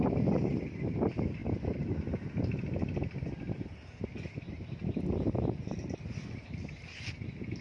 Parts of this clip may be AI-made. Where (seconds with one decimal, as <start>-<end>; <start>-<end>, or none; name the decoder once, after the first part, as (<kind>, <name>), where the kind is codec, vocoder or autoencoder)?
none